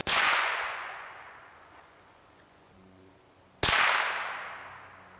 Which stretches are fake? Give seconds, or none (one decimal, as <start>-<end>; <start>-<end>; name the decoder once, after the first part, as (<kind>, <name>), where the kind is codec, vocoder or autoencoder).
0.0-3.1 (vocoder, Vocos)